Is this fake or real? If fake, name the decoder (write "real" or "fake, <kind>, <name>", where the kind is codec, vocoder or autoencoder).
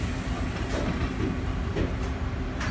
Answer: real